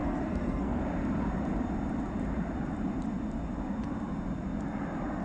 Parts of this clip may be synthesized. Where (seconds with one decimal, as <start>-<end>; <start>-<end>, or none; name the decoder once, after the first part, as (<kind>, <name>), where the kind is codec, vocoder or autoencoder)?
0.0-0.8 (codec, SNAC)